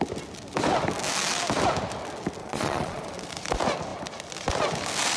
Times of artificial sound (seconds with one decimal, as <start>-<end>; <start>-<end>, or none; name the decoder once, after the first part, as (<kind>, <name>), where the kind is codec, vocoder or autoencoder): 2.4-3.1 (vocoder, Vocos)